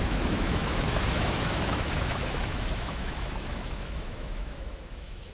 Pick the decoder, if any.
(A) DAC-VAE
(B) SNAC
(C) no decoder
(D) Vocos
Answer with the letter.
A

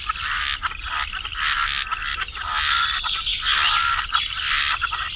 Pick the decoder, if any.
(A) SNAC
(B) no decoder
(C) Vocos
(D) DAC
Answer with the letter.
B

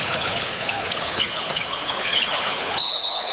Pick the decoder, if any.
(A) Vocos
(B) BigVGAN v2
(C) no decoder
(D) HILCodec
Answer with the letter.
D